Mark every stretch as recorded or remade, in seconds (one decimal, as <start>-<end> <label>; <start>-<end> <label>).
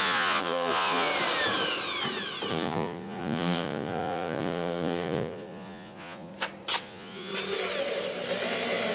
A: 0.0-1.1 remade; 1.1-2.5 recorded; 2.5-6.3 remade; 6.3-6.8 recorded; 6.8-7.3 remade; 7.3-8.9 recorded